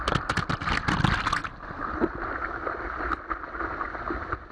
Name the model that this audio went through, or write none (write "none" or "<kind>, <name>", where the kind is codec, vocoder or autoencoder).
none